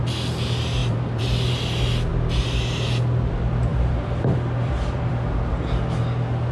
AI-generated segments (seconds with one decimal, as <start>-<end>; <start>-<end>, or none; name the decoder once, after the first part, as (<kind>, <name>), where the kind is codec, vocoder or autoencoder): 0.8-1.5 (vocoder, BigVGAN v2); 3.7-5.1